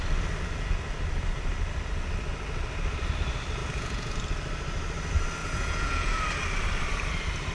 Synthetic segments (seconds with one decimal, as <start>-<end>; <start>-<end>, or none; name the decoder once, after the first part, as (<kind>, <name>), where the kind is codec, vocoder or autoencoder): 3.6-4.1 (vocoder, Vocos); 5.4-6.2